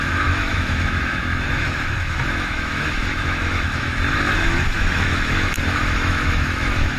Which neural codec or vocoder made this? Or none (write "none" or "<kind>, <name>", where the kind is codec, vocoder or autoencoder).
autoencoder, DAC-VAE